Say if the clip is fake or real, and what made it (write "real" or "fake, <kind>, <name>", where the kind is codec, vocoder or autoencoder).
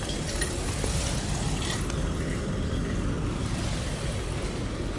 real